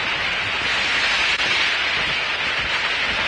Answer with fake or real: real